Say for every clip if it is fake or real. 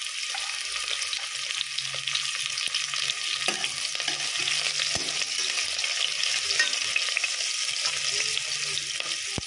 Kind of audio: real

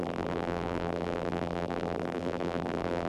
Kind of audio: fake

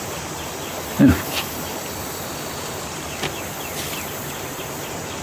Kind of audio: fake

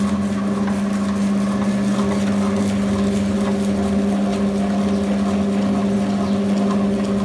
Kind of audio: real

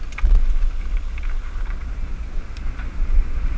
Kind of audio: real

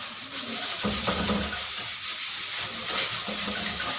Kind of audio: real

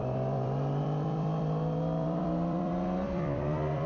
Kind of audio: fake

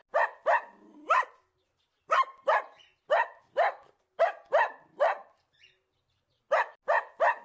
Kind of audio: real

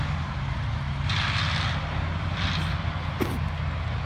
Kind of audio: real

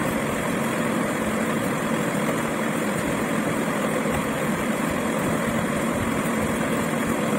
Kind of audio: fake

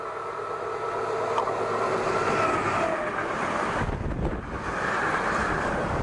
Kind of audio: real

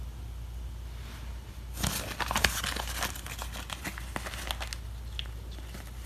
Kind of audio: real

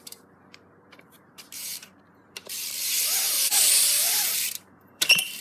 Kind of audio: fake